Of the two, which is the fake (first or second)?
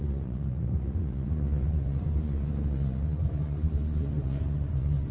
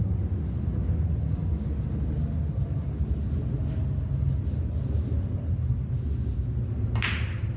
first